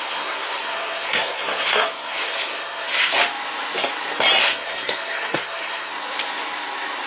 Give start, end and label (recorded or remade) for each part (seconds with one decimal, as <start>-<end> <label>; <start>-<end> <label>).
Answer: 0.0-3.2 remade; 3.2-4.4 recorded; 4.4-5.9 remade; 5.9-7.1 recorded